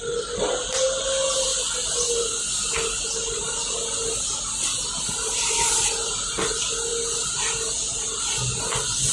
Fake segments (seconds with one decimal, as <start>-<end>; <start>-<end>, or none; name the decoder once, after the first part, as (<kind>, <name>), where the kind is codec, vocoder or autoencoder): none

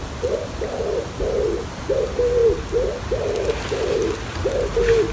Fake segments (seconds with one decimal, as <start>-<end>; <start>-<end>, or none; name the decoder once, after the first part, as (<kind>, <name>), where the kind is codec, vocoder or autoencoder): none

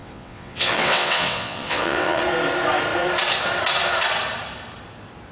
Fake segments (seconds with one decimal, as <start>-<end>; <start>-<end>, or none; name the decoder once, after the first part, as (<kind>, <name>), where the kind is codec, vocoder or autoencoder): 0.0-2.2 (vocoder, WaveNeXt)

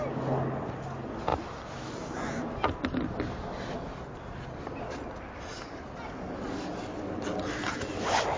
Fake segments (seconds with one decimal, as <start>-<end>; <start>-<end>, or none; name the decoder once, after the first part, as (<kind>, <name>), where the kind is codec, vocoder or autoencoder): none

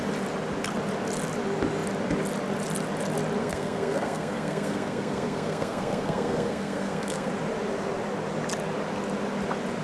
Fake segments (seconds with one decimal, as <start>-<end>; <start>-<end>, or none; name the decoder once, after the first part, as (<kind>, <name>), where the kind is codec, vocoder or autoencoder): 3.4-7.3 (codec, SNAC)

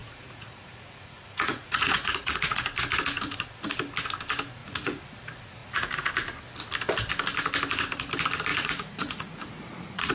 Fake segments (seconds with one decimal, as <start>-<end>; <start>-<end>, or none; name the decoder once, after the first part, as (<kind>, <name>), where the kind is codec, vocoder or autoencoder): 0.0-2.6 (vocoder, Vocos); 4.6-5.1; 5.6-6.1; 8.5-10.1

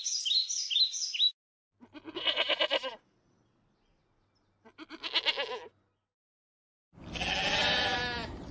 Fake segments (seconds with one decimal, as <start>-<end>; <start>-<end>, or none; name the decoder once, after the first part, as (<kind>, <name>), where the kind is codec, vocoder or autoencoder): none

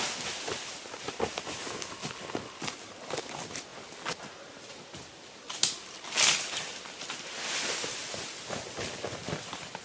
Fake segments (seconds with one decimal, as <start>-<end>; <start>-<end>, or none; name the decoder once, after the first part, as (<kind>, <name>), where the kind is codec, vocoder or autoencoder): none